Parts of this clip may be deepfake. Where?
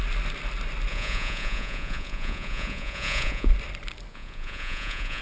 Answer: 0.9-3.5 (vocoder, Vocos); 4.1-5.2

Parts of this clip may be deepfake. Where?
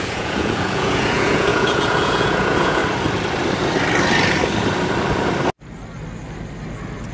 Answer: 0.0-2.8 (vocoder, Vocos)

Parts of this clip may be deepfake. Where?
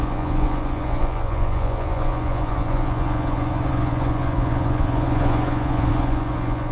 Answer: 0.0-6.7 (vocoder, Vocos)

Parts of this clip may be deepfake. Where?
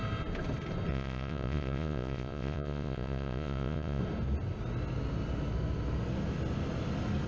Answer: 0.9-4.0 (vocoder, Vocos)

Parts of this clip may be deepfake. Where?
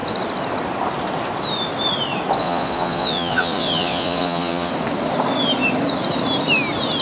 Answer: 2.4-4.7 (vocoder, Vocos)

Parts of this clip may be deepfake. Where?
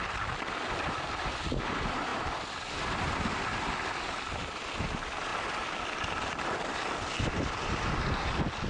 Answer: none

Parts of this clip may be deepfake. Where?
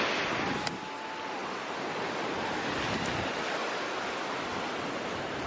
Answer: none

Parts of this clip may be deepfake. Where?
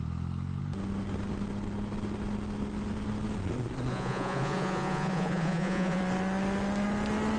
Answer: 3.9-6.0 (vocoder, Vocos)